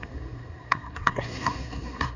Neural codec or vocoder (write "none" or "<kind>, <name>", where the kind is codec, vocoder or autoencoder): codec, SNAC